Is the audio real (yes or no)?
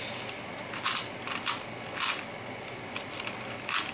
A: yes